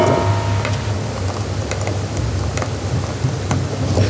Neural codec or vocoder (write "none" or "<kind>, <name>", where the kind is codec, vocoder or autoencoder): none